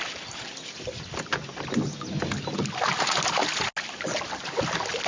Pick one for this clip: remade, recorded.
recorded